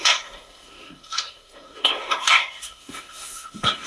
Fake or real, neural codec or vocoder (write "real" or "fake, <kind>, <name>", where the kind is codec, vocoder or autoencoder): fake, codec, SNAC